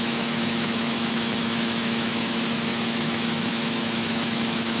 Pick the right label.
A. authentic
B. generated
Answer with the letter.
B